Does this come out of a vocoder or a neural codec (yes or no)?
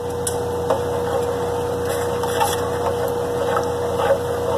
no